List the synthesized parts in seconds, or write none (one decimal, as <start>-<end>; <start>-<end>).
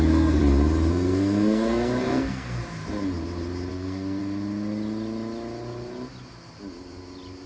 0.0-0.4; 0.9-2.6; 3.7-4.2